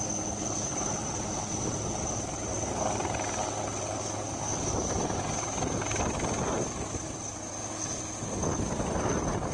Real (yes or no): yes